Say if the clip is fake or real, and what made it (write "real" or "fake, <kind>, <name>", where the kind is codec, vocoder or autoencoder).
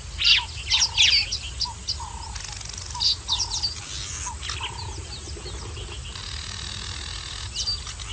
real